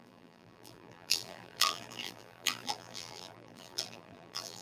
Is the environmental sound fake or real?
fake